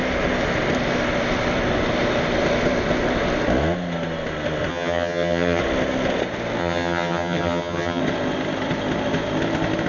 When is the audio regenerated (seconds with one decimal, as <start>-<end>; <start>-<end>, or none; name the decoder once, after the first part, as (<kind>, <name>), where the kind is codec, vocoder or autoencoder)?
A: 4.7-5.6 (vocoder, HiFi-GAN); 6.6-8.0